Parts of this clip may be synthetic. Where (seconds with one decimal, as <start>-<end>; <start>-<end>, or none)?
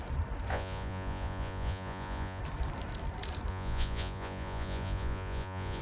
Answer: 0.5-2.4; 3.5-5.8